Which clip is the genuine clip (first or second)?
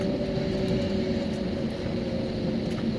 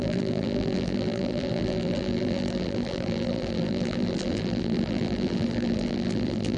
first